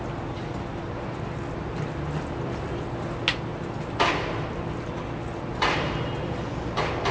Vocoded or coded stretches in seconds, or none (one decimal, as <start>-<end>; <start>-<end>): 5.5-6.4